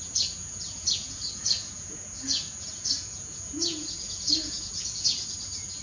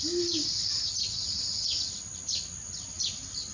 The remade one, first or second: first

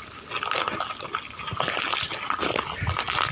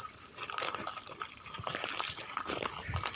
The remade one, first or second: second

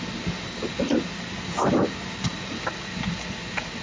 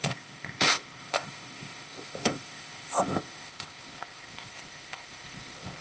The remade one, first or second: second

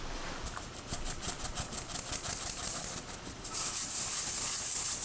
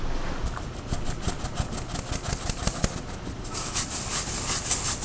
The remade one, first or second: first